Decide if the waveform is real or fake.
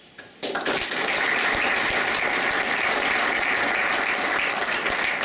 real